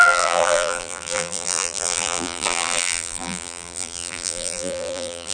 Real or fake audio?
fake